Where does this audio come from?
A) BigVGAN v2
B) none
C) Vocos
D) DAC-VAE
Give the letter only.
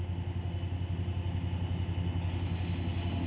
B